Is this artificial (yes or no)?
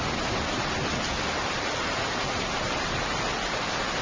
no